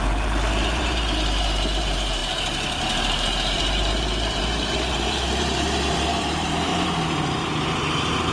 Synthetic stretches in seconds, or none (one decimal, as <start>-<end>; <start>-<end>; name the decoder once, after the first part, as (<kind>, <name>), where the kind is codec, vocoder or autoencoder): 0.0-8.3 (vocoder, BigVGAN v2)